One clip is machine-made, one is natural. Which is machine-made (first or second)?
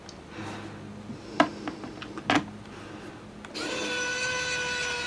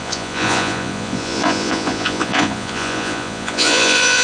second